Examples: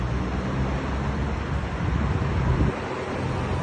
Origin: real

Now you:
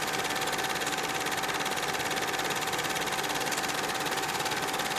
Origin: real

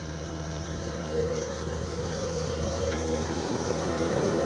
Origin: fake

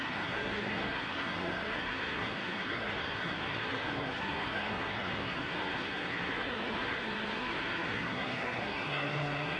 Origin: fake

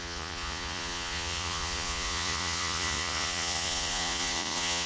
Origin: fake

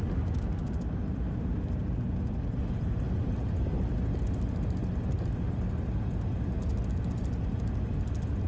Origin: real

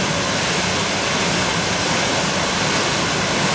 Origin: real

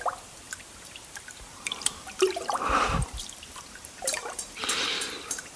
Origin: fake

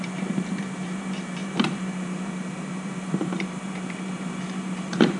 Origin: fake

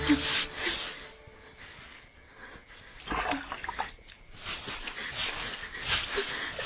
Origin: real